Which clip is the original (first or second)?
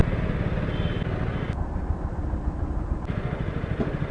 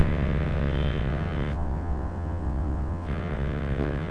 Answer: first